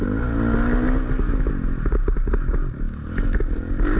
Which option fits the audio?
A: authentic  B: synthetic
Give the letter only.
A